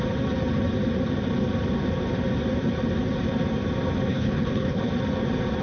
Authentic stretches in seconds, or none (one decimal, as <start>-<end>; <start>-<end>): 0.0-4.1; 4.9-5.6